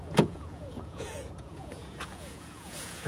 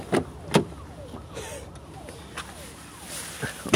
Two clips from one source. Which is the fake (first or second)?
first